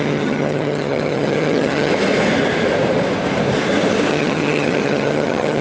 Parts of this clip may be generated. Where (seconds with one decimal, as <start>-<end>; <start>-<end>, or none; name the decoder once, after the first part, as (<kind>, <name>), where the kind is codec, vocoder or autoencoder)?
0.0-1.9 (vocoder, HiFi-GAN); 4.1-5.6